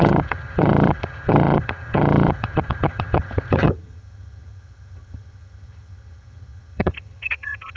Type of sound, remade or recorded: remade